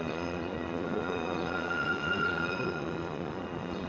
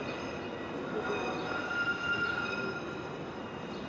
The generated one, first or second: first